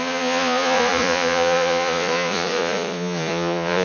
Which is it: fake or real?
fake